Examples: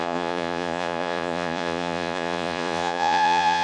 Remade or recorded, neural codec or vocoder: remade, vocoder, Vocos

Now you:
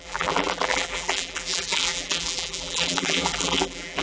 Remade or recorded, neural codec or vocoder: remade, vocoder, BigVGAN v2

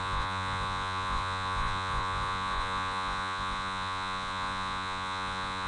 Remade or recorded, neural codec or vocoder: remade, vocoder, Vocos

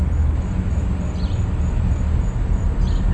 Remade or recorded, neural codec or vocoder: recorded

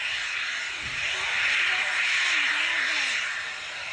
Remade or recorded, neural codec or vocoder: recorded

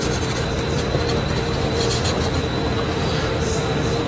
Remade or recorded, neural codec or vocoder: remade, vocoder, BigVGAN v2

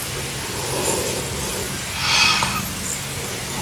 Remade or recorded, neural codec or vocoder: recorded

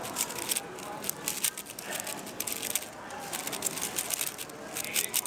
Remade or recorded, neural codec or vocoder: recorded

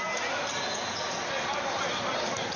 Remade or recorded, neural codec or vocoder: recorded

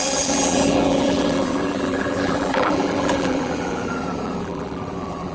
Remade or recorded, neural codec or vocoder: remade, vocoder, BigVGAN v2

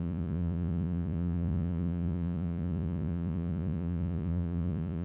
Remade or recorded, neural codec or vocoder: remade, vocoder, Vocos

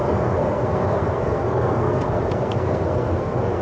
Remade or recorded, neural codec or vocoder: remade, codec, SNAC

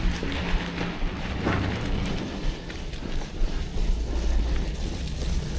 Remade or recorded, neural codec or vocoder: recorded